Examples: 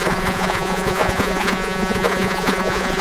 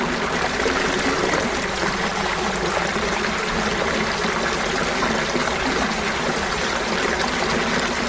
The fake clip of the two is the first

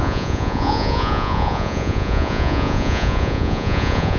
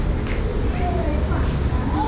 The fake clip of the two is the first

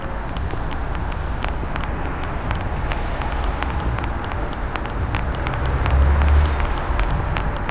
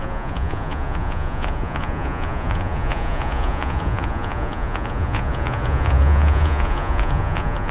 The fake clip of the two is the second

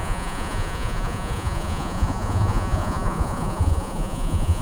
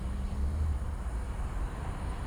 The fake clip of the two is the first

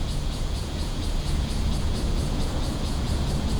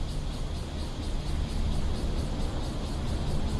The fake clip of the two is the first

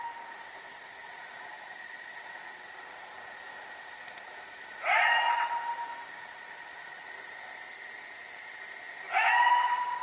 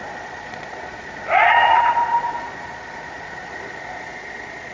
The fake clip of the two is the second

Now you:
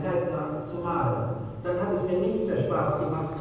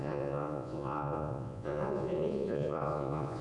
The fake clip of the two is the second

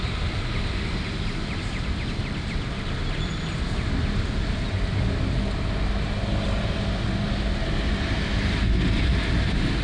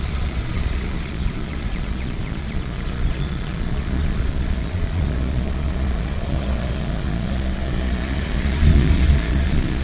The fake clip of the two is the second